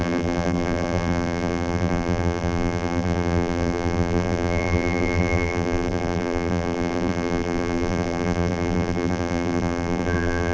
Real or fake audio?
fake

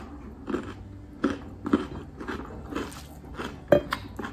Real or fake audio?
real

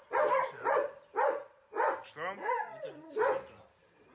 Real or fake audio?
real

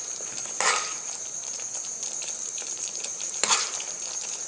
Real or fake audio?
fake